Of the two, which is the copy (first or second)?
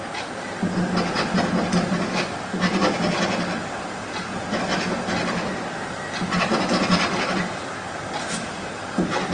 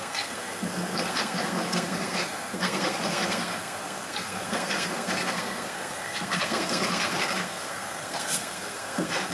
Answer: second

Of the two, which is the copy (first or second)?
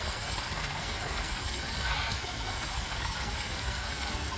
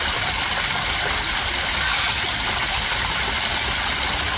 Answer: first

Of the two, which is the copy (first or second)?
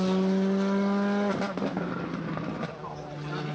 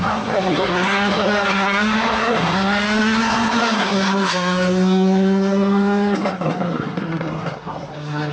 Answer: second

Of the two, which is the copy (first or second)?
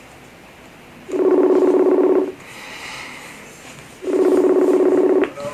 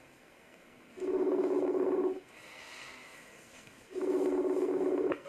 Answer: second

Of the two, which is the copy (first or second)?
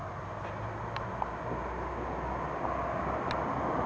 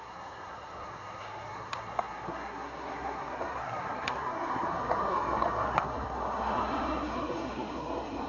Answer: second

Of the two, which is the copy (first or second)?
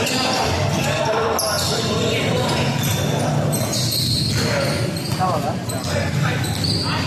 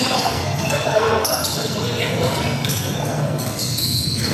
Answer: second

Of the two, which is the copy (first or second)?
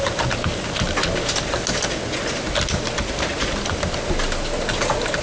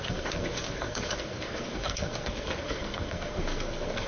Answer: second